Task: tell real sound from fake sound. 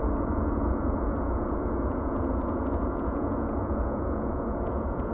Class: fake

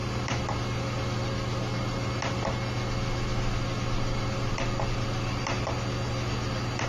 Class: real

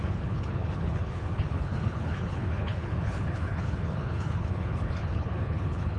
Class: fake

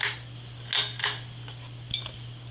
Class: real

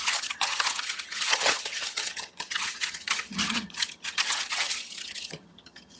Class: fake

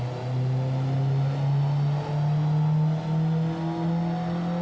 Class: real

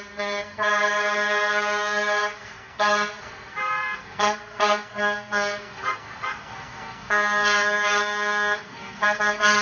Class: fake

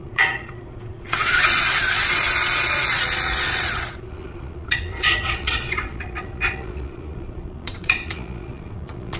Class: fake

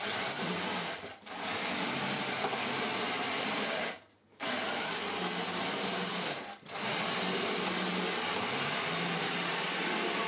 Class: real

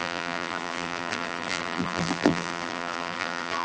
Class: fake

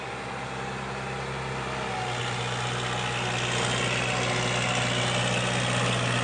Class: real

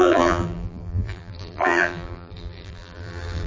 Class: fake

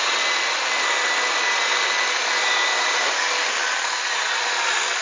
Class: real